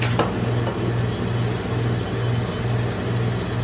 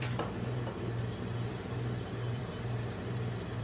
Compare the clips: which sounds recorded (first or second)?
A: first